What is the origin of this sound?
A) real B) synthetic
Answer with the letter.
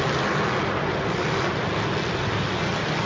A